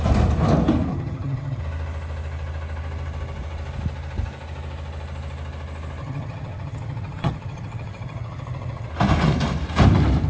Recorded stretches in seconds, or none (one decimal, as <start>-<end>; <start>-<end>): 0.0-0.9; 1.6-6.0; 8.9-10.3